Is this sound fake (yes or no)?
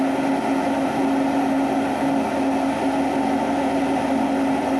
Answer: no